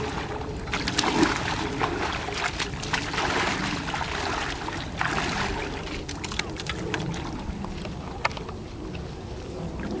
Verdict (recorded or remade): recorded